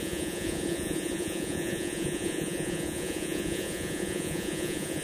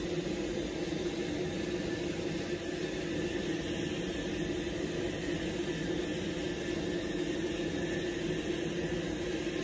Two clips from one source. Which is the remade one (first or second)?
first